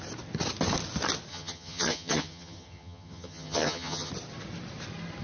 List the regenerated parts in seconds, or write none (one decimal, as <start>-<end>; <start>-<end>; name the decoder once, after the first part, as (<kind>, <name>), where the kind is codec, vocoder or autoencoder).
1.3-4.1 (vocoder, HiFi-GAN)